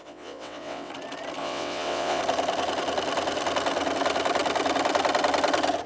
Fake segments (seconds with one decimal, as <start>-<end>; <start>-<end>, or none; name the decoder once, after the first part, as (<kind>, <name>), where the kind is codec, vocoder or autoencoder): 0.0-0.9 (vocoder, WaveNeXt); 1.4-2.2